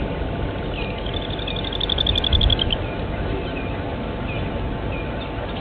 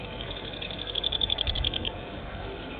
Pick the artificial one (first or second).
second